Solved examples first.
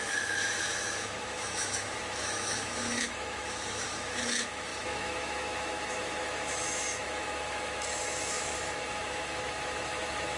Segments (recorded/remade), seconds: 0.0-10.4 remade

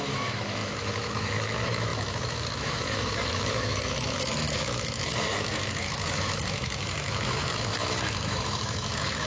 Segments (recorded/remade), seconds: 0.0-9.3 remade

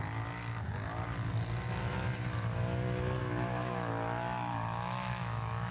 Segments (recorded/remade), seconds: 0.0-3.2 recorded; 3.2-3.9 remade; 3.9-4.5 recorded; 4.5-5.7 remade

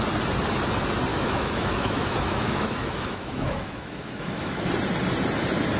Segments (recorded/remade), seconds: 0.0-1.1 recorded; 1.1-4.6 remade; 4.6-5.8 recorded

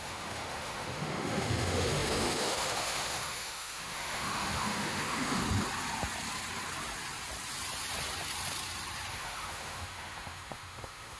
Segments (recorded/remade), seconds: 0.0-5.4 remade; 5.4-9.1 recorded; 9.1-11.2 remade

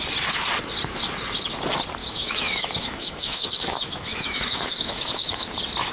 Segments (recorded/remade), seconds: 0.0-2.0 recorded; 2.0-5.5 remade; 5.5-5.9 recorded

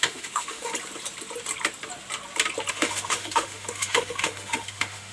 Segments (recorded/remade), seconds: 0.0-0.7 remade; 0.7-2.7 recorded; 2.7-5.1 remade